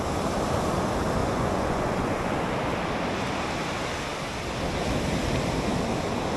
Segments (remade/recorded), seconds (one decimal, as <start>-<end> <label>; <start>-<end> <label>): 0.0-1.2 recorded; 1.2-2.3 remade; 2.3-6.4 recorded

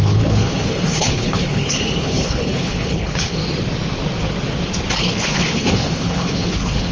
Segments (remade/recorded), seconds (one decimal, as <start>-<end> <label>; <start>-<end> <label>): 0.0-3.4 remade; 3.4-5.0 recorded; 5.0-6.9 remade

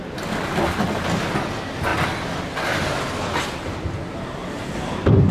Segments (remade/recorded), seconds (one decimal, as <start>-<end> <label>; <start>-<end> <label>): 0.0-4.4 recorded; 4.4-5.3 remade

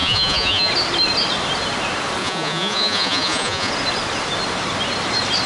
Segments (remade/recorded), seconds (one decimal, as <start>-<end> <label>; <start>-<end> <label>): 0.0-0.7 remade; 0.7-2.2 recorded; 2.2-3.7 remade; 3.7-5.5 recorded

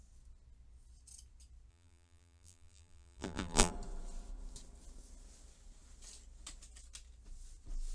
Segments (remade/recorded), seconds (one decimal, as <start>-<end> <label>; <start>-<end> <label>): 0.0-1.7 recorded; 1.7-3.7 remade; 3.7-7.9 recorded

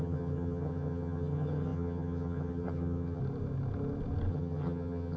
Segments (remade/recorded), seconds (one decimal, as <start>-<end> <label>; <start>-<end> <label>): 0.0-3.2 remade; 3.2-4.3 recorded; 4.3-5.2 remade

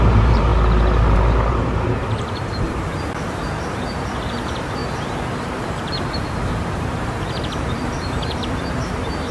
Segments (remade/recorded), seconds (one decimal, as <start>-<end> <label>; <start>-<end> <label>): 0.0-0.5 remade; 0.5-1.5 recorded; 1.5-4.8 remade; 4.8-5.3 recorded; 5.3-9.3 remade